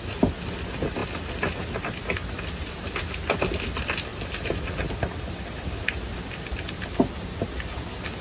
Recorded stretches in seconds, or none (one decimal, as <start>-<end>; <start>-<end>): 0.0-8.2